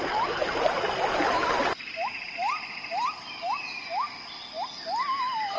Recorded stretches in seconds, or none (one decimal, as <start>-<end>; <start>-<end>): 0.0-5.6

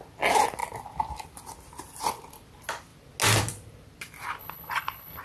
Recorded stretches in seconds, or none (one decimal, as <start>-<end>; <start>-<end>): 0.0-4.4